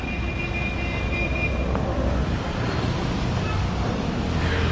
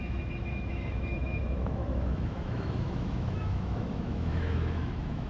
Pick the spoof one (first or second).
second